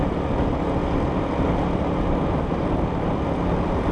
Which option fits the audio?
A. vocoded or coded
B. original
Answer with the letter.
B